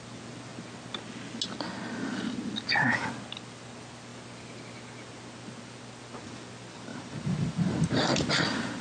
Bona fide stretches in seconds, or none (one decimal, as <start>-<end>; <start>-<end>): 0.0-6.9; 8.3-8.8